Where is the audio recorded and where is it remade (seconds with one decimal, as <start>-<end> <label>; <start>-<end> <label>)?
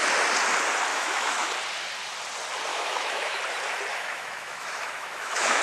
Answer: 0.0-0.9 recorded; 0.9-1.5 remade; 1.5-2.7 recorded; 2.7-3.4 remade; 3.4-3.9 recorded; 3.9-5.6 remade